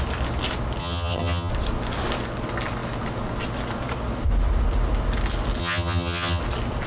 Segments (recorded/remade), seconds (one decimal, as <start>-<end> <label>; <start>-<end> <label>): 0.0-0.8 recorded; 0.8-1.5 remade; 1.5-5.6 recorded; 5.6-6.4 remade; 6.4-6.9 recorded

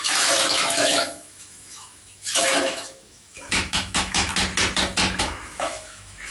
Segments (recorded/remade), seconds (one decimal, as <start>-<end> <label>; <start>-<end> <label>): 0.0-4.3 remade; 4.3-5.2 recorded; 5.2-6.3 remade

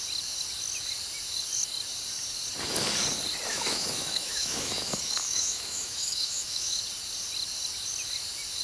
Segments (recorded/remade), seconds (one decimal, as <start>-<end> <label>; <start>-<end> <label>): 0.0-3.5 recorded; 3.5-6.8 remade; 6.8-8.6 recorded

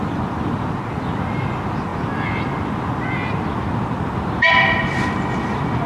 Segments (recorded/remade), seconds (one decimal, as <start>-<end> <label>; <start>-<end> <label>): 0.0-5.9 recorded